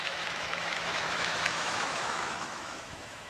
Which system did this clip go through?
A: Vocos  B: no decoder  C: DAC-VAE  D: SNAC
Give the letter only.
C